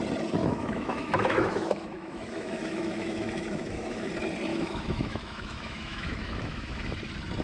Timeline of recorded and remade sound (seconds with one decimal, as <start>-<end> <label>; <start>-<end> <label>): 0.0-0.4 recorded; 0.4-4.1 remade; 4.1-4.5 recorded; 4.5-7.0 remade; 7.0-7.4 recorded